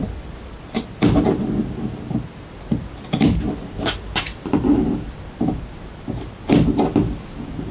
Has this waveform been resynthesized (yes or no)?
yes